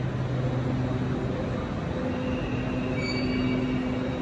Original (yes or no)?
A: yes